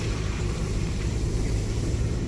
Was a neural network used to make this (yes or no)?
yes